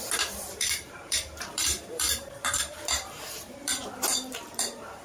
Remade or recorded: remade